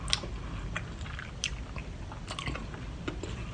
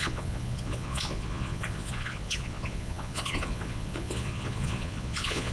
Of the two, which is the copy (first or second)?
second